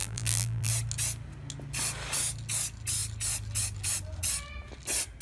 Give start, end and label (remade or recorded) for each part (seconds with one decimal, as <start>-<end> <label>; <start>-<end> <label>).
0.0-0.7 remade; 0.7-5.2 recorded